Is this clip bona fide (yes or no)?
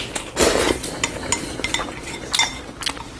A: yes